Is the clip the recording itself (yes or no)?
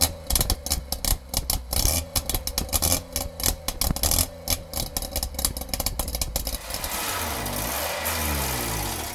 yes